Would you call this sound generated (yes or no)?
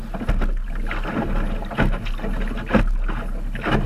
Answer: no